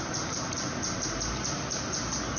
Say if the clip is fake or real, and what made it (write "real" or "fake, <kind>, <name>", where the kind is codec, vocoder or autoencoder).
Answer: real